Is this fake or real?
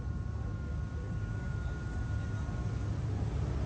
real